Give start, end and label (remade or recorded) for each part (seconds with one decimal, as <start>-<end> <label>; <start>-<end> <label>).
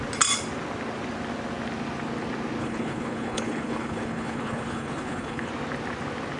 0.0-2.6 recorded; 2.6-5.5 remade; 5.5-6.4 recorded